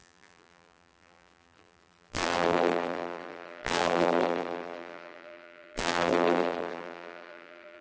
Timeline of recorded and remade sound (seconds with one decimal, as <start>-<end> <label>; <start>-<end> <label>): 0.0-7.8 remade